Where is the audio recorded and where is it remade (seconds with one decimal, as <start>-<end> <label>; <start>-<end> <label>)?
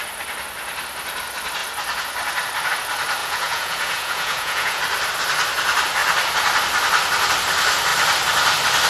0.0-3.2 recorded; 3.2-4.8 remade; 4.8-8.9 recorded